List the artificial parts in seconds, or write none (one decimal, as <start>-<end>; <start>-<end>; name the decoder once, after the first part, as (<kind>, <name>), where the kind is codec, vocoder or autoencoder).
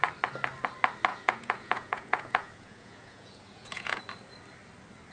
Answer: 1.1-4.0 (vocoder, Vocos)